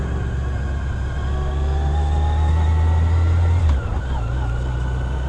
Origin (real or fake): real